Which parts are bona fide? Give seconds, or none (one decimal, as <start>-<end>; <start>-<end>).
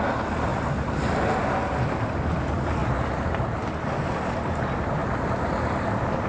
0.0-6.3